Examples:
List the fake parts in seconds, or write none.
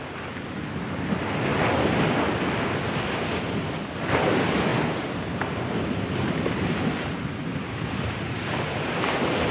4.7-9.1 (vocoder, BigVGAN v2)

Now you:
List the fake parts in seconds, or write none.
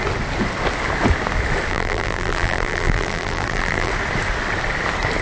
1.7-3.9 (vocoder, BigVGAN v2)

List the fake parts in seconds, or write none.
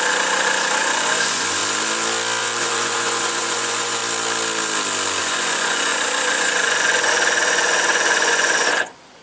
0.0-1.6 (vocoder, Vocos); 2.4-4.0; 5.2-9.2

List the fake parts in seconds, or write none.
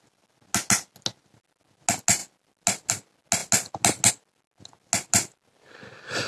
none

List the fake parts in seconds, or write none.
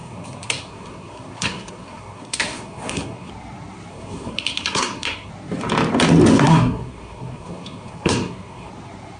0.0-3.3 (codec, SNAC); 3.9-5.3; 6.3-8.7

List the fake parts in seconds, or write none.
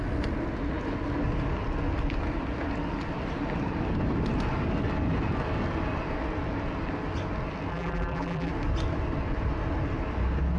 7.7-8.5 (vocoder, BigVGAN v2)